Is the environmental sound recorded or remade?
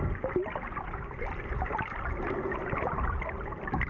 recorded